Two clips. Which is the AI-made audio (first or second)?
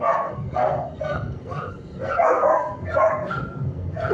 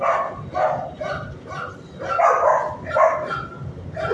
first